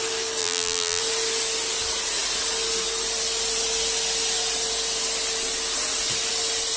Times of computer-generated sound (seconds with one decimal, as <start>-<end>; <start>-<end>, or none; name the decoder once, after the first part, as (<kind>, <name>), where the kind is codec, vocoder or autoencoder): 0.4-1.0 (vocoder, BigVGAN v2)